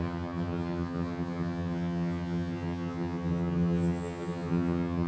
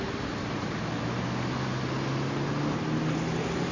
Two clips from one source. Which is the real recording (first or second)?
second